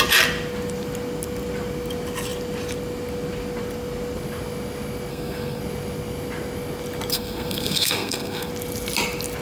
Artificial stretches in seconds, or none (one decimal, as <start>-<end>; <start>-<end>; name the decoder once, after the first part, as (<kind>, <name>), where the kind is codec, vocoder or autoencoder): 5.1-5.6 (codec, SNAC); 7.1-8.5